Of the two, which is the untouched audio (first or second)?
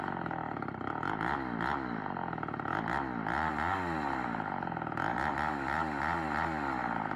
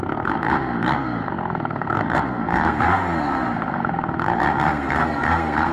first